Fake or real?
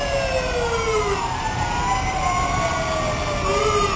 real